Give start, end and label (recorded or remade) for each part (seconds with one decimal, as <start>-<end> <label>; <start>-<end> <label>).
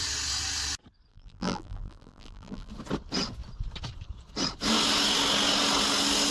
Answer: 0.0-1.1 recorded; 1.1-2.7 remade; 2.7-6.3 recorded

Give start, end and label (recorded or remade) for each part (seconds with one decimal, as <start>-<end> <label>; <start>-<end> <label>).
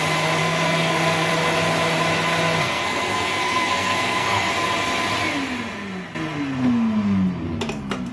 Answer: 0.0-0.4 recorded; 0.4-1.3 remade; 1.3-2.6 recorded; 2.6-4.5 remade; 4.5-8.1 recorded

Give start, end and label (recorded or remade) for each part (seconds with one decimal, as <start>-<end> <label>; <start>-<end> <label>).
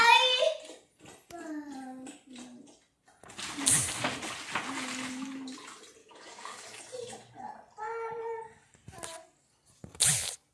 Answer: 0.0-6.0 recorded; 6.0-6.8 remade; 6.8-10.5 recorded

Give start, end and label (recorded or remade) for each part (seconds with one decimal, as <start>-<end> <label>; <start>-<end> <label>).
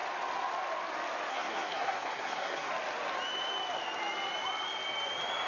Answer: 0.0-1.3 recorded; 1.3-2.7 remade; 2.7-5.5 recorded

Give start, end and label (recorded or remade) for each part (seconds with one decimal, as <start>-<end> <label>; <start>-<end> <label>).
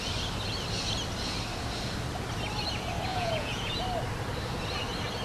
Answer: 0.0-3.1 recorded; 3.1-3.7 remade; 3.7-5.2 recorded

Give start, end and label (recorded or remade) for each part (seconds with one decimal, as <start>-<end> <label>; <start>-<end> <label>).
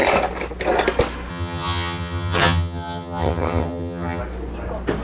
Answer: 0.0-1.3 recorded; 1.3-4.2 remade; 4.2-5.0 recorded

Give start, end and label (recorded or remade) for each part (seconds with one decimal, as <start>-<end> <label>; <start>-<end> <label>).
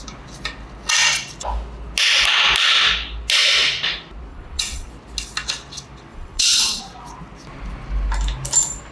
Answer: 0.0-4.3 recorded; 4.3-4.9 remade; 4.9-6.1 recorded; 6.1-6.8 remade; 6.8-8.9 recorded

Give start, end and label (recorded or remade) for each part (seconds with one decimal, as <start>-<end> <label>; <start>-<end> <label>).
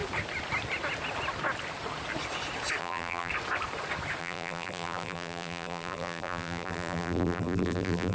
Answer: 0.0-2.8 recorded; 2.8-3.3 remade; 3.3-4.2 recorded; 4.2-8.1 remade